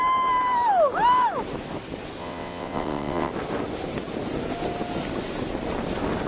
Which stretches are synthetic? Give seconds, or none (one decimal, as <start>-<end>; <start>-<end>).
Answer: 2.2-3.3